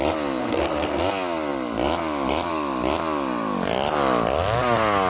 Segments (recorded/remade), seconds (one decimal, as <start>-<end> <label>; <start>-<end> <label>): 0.0-0.4 recorded; 0.4-1.0 remade; 1.0-5.1 recorded